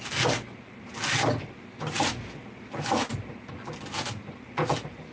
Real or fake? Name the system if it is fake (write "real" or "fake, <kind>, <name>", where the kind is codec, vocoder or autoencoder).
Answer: real